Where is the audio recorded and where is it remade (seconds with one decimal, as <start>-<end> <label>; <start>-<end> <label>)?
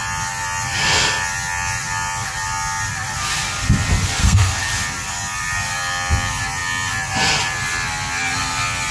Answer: 0.0-4.2 recorded; 4.2-4.7 remade; 4.7-8.9 recorded